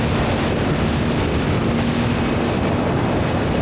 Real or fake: real